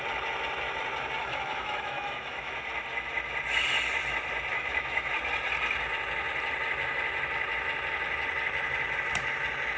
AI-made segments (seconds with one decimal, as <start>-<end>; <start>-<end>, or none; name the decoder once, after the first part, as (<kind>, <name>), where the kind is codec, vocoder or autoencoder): 1.2-2.5 (autoencoder, DAC-VAE); 4.5-5.1